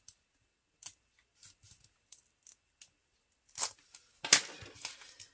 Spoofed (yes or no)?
no